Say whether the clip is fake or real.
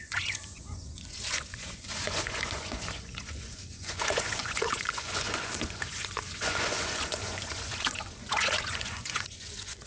fake